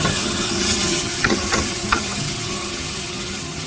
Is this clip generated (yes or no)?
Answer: yes